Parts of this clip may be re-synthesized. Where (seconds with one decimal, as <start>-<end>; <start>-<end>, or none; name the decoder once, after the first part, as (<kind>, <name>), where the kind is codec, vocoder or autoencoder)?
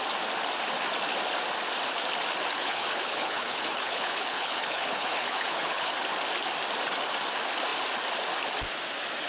2.6-5.9 (codec, HILCodec)